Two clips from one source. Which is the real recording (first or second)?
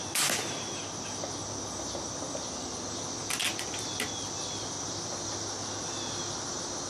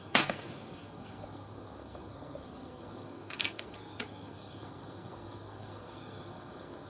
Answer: first